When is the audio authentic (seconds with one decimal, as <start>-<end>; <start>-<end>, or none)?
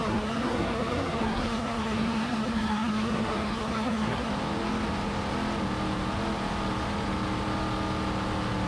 4.3-8.7